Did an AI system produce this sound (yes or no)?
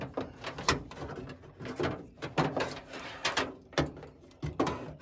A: no